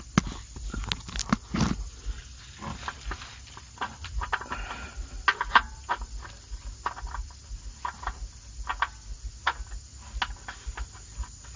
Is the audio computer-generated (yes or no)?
no